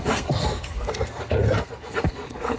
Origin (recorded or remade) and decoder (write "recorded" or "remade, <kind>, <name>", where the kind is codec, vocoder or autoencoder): remade, codec, SNAC